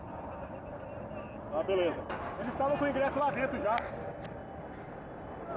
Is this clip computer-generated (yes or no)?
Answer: no